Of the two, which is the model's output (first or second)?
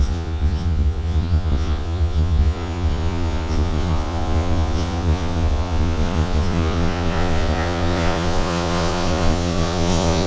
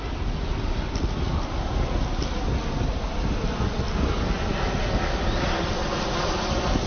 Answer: first